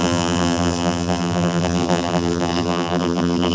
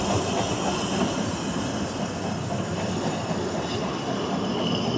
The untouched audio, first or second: second